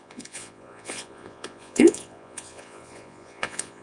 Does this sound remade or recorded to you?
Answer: remade